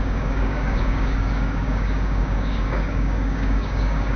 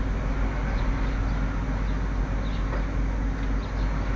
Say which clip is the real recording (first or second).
second